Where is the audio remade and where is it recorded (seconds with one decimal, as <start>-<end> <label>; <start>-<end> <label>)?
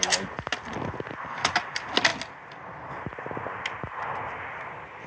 0.0-5.1 recorded